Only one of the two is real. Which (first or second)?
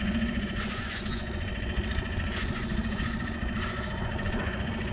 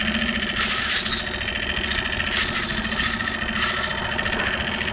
second